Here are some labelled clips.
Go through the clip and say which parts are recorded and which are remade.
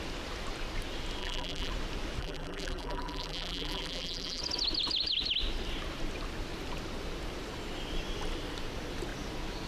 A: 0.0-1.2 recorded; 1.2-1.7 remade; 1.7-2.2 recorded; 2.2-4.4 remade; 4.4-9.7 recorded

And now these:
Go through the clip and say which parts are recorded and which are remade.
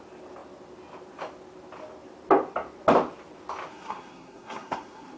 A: 0.0-3.7 recorded; 3.7-5.2 remade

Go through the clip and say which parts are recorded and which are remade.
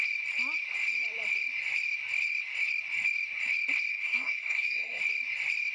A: 0.0-3.9 recorded; 3.9-5.0 remade; 5.0-5.7 recorded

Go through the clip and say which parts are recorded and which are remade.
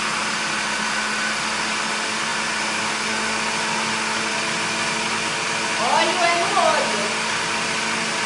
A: 0.0-8.3 recorded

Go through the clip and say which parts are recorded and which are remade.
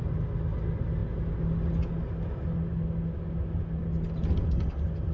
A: 0.0-5.1 recorded